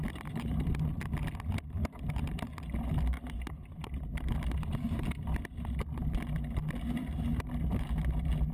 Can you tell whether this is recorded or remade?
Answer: recorded